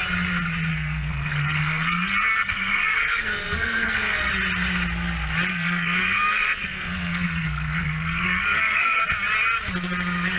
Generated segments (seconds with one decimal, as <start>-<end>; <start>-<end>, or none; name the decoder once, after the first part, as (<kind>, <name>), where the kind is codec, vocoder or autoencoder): 0.7-4.3 (codec, SNAC); 5.5-9.0